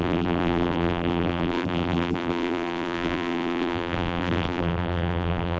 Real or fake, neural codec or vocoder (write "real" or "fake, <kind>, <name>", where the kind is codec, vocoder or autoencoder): fake, vocoder, BigVGAN v2